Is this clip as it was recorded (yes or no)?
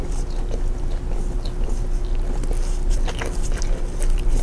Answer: yes